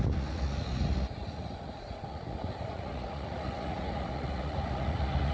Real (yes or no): no